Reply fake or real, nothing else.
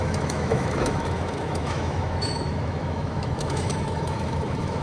fake